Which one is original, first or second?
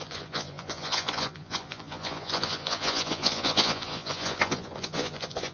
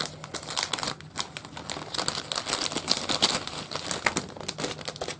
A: second